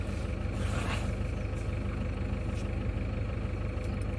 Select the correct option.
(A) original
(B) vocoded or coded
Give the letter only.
A